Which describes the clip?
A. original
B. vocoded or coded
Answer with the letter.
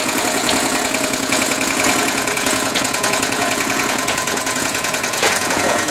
B